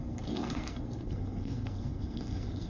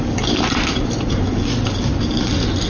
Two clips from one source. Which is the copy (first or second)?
first